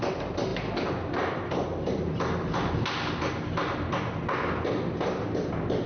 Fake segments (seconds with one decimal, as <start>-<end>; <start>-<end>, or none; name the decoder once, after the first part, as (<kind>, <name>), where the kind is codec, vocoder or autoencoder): none